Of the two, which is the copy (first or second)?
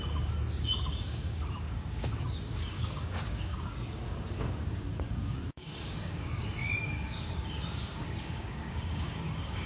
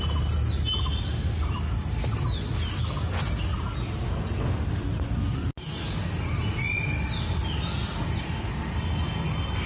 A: first